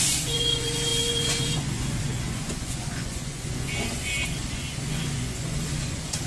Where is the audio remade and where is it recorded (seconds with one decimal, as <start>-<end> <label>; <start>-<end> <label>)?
0.0-6.3 remade